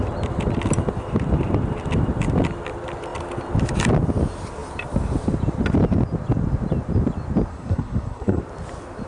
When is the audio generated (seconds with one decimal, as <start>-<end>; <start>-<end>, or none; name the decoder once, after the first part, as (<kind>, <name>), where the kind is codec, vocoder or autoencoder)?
7.5-8.4 (codec, SNAC)